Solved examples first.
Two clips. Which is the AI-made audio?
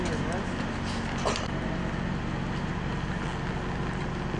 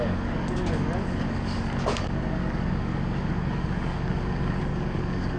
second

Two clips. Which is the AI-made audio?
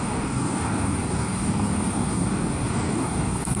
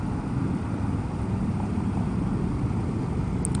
first